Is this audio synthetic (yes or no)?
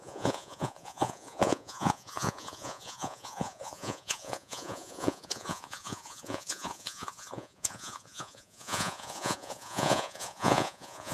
yes